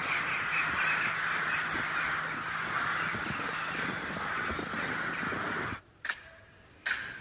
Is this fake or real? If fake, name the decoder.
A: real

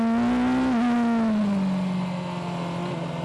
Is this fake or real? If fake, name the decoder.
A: real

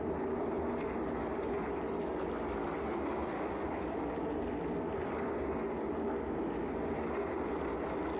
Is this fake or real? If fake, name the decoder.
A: fake, vocoder, BigVGAN v2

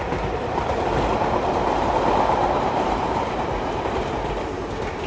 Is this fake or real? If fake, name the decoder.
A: fake, vocoder, BigVGAN v2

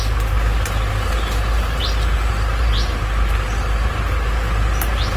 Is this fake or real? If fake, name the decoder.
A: real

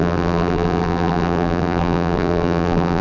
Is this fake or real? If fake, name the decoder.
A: fake, vocoder, BigVGAN v2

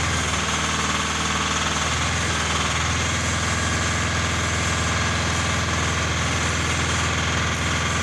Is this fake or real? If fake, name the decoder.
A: real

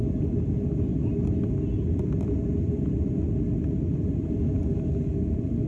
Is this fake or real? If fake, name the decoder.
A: real